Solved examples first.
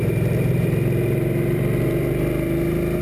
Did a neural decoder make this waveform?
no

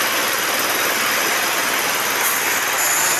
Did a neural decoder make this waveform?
no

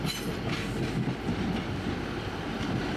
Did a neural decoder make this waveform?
no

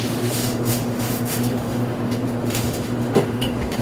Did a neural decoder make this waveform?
yes